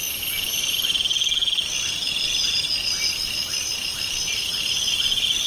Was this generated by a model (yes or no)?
no